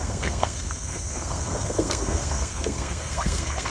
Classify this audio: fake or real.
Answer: fake